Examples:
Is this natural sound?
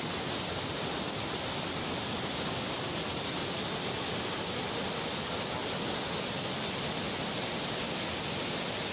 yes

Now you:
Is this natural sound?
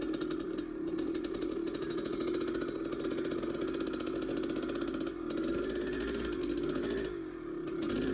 yes